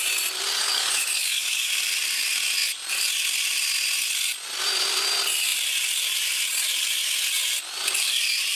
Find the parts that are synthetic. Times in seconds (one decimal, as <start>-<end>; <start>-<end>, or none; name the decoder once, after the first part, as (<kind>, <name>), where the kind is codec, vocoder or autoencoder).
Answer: 0.6-1.7 (codec, DAC)